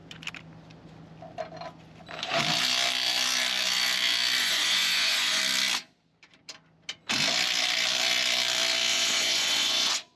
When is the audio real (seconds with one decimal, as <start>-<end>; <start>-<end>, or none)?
0.0-4.4; 5.4-8.9